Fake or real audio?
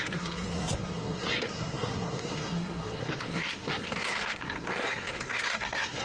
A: fake